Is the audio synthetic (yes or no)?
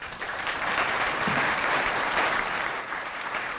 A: yes